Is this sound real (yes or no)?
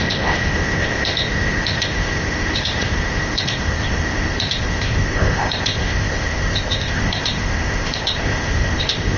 no